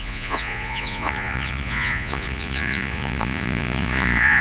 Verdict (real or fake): fake